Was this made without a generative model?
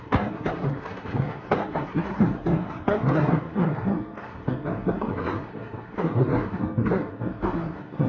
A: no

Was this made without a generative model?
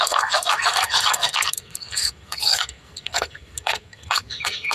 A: no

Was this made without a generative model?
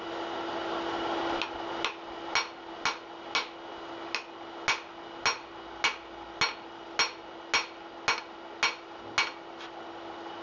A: yes